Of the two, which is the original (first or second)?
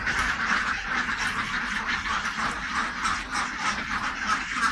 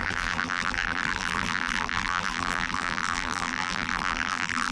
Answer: first